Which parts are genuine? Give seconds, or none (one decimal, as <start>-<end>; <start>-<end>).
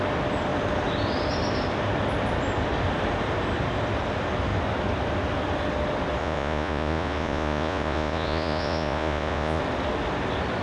0.0-6.2; 9.6-10.6